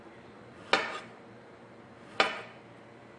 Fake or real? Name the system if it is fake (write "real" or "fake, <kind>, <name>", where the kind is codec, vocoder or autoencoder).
real